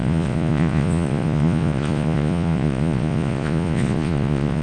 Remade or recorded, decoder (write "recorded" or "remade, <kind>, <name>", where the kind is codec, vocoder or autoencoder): remade, vocoder, Vocos